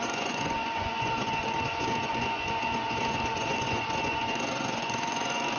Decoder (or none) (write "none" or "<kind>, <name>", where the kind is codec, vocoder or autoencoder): vocoder, Vocos